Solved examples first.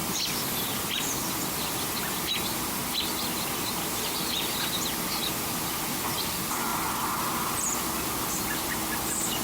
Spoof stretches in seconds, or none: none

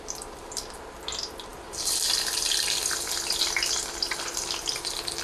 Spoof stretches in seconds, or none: none

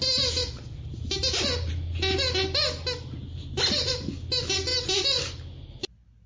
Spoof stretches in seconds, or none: none

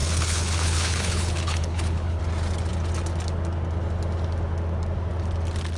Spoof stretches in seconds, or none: 0.0-2.2 (codec, HILCodec)

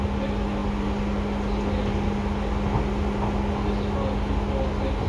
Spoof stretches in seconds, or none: none

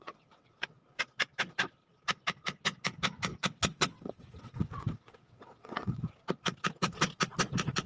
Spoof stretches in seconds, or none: 0.0-1.0 (vocoder, WaveNeXt); 3.3-6.1

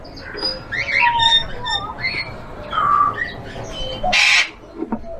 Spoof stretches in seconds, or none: none

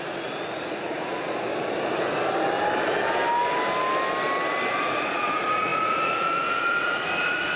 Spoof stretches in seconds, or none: 0.0-1.5 (vocoder, Vocos); 4.7-7.6